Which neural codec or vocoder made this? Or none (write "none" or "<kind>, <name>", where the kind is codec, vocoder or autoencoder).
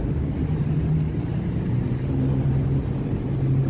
none